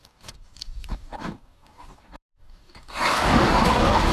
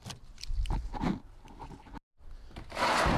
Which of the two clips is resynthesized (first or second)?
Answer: first